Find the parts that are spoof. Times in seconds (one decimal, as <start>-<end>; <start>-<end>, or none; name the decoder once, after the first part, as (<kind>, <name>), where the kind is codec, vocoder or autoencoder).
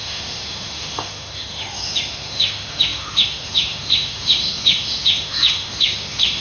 0.0-6.4 (autoencoder, DAC-VAE)